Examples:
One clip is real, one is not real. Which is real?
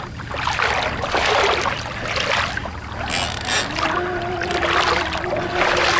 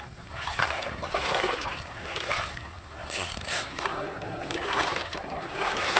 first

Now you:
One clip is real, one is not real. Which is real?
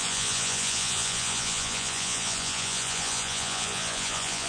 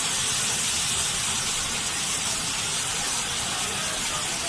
second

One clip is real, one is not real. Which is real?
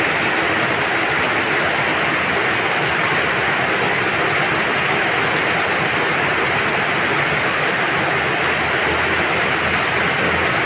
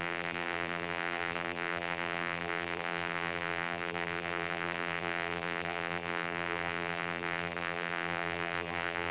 first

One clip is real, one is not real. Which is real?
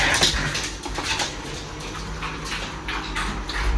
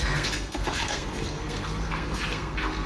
first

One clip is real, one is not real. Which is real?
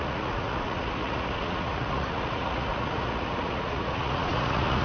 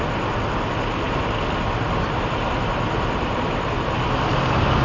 second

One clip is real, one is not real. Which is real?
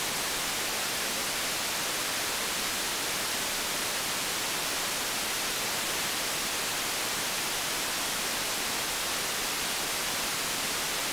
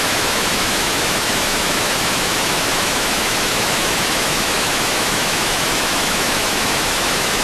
first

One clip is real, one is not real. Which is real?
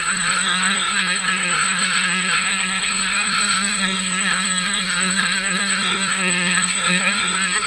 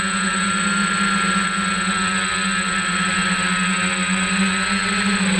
second